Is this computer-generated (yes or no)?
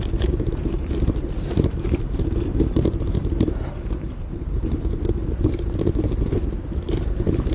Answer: yes